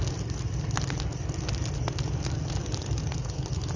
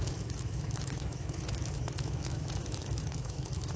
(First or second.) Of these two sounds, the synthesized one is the second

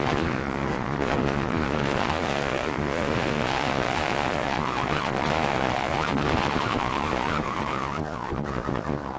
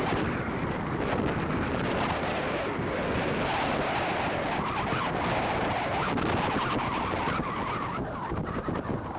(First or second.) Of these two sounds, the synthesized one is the first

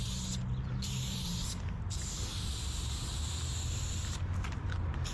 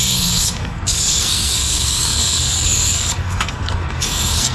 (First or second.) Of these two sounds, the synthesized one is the second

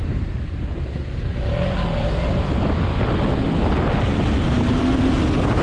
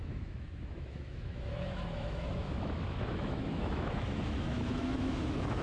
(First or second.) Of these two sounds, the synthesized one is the second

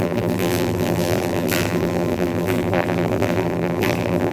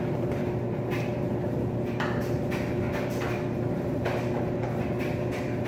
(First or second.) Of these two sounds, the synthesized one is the first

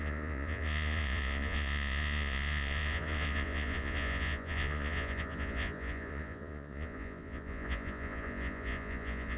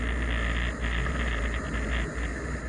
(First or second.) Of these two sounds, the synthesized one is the first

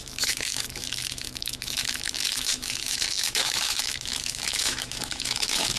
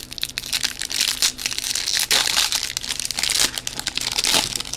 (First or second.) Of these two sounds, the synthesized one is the first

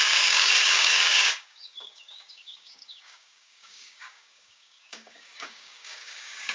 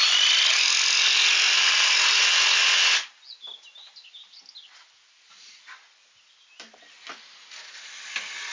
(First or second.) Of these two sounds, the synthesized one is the first